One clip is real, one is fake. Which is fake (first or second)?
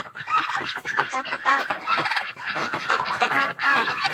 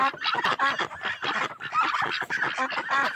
first